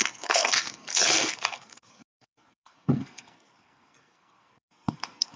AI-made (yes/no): yes